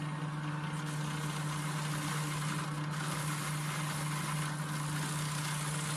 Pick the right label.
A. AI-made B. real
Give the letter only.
B